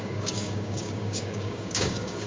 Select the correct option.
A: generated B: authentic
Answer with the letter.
A